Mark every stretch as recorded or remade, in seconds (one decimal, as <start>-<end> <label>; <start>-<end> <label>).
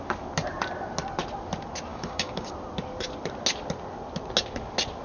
0.0-1.9 recorded; 1.9-2.5 remade; 2.5-5.0 recorded